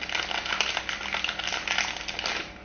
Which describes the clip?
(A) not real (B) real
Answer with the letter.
B